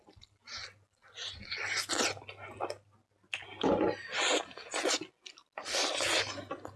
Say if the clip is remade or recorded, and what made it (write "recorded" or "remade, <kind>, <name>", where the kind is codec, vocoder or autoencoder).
recorded